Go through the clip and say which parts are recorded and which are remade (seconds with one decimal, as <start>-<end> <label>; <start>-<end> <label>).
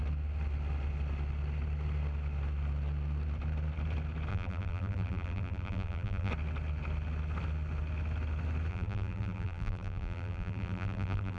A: 0.0-4.3 recorded; 4.3-6.3 remade; 6.3-8.7 recorded; 8.7-11.4 remade